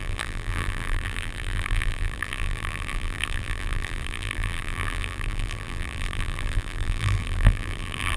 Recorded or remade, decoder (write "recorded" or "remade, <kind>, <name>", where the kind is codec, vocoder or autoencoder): remade, vocoder, BigVGAN v2